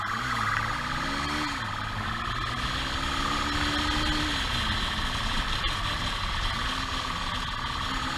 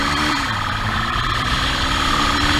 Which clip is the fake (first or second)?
second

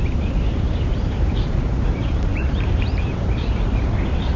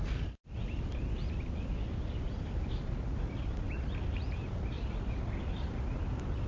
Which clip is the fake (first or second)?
first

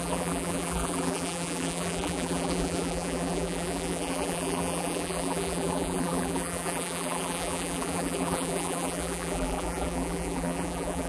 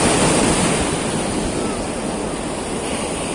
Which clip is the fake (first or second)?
first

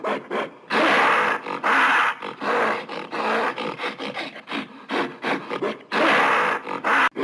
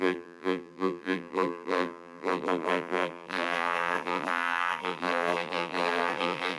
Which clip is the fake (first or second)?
second